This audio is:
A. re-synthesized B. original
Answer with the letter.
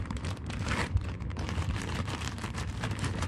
A